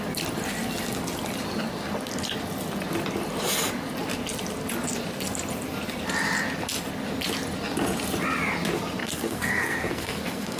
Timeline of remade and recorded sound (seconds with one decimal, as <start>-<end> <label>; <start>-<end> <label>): 0.0-9.0 recorded; 9.0-10.6 remade